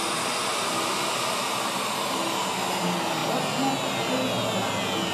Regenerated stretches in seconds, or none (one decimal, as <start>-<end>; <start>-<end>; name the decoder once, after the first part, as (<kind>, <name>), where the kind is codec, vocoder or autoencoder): none